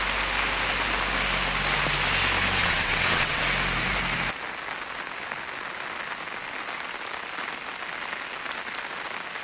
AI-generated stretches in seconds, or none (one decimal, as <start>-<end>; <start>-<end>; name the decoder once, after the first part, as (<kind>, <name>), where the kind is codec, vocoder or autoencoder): 2.6-3.4 (vocoder, WaveNeXt)